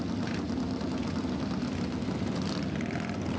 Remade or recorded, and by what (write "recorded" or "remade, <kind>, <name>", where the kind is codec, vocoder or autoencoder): recorded